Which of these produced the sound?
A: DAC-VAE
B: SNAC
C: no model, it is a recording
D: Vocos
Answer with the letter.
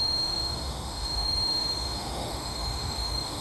A